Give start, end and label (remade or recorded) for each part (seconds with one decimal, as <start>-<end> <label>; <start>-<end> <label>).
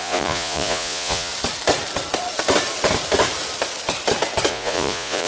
0.0-1.3 remade; 1.3-4.5 recorded; 4.5-5.3 remade